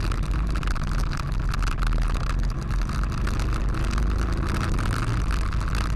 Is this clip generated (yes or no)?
no